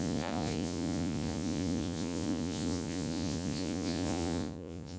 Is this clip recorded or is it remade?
remade